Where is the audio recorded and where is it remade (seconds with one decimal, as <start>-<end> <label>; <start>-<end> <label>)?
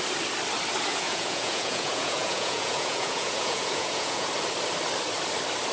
0.0-0.9 recorded; 0.9-4.3 remade; 4.3-5.7 recorded